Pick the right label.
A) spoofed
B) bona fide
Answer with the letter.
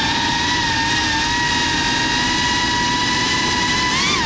B